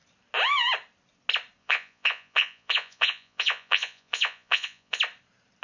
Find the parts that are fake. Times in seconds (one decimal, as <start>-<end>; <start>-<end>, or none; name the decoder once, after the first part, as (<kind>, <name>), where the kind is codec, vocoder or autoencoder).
1.6-5.0 (vocoder, Vocos)